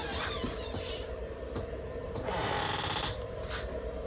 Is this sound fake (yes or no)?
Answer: yes